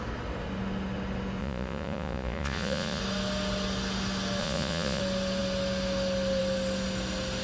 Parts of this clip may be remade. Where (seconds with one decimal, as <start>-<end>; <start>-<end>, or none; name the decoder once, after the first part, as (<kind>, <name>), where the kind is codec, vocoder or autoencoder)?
1.4-3.0 (vocoder, Vocos); 4.4-5.0